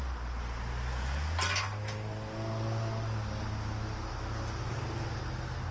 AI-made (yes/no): no